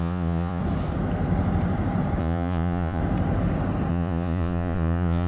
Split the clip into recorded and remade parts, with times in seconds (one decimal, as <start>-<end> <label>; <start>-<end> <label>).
0.0-0.6 remade; 0.6-2.2 recorded; 2.2-3.0 remade; 3.0-3.9 recorded; 3.9-5.3 remade